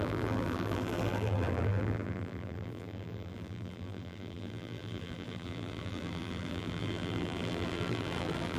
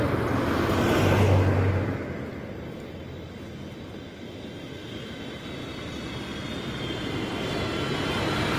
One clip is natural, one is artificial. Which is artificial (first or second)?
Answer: first